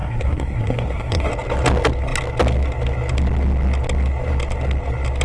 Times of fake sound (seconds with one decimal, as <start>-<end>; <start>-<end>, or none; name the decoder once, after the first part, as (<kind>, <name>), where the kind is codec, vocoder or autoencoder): 0.0-1.3 (codec, SNAC)